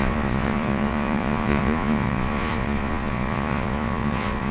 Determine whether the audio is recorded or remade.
remade